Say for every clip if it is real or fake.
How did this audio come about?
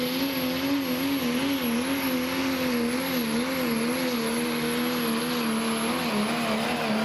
real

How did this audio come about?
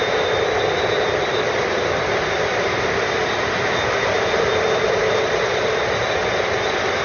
real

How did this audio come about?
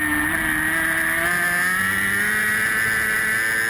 real